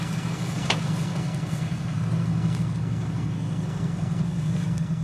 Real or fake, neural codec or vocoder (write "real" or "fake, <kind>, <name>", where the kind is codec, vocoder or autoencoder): fake, codec, SNAC